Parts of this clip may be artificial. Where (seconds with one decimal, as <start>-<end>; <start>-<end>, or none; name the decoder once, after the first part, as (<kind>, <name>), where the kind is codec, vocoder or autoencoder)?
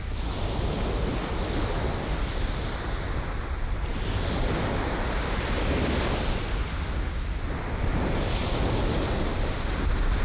none